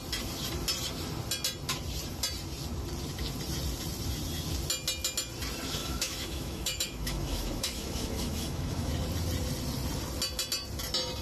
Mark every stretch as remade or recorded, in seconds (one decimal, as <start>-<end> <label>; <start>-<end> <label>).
0.0-5.8 recorded; 5.8-8.9 remade; 8.9-11.2 recorded